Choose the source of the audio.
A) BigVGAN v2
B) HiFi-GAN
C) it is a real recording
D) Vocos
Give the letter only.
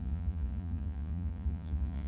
D